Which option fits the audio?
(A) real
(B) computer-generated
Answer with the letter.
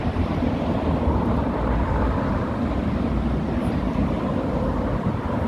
B